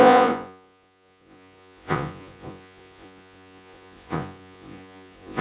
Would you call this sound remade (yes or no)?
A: yes